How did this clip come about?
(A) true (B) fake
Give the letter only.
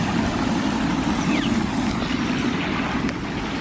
A